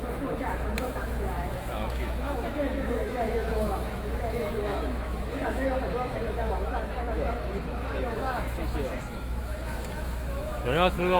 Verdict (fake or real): fake